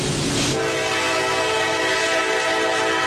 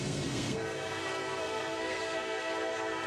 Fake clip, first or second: second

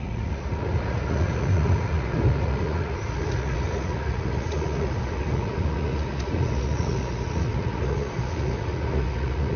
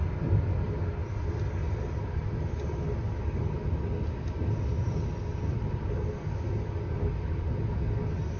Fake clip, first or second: first